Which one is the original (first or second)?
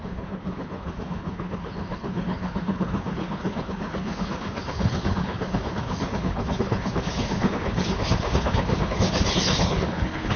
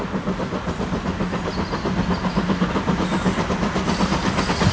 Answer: second